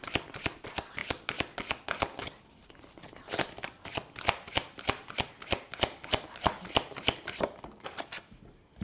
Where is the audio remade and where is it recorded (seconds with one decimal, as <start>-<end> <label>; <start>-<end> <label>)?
0.0-8.8 recorded